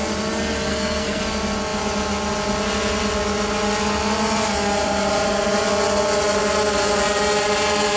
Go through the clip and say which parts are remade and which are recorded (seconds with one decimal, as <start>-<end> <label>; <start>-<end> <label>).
0.0-0.7 recorded; 0.7-1.2 remade; 1.2-8.0 recorded